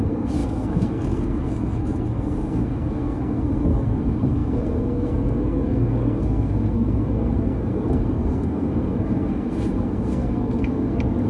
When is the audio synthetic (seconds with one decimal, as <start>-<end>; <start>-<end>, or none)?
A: 0.0-11.3